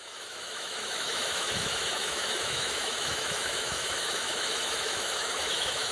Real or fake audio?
fake